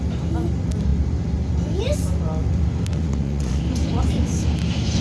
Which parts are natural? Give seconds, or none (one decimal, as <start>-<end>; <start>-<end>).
0.0-2.9; 3.6-5.0